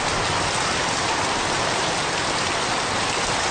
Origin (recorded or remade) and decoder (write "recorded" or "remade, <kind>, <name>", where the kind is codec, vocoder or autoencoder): recorded